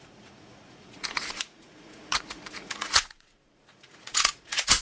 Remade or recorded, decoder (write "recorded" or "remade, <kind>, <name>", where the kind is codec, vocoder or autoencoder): remade, vocoder, Vocos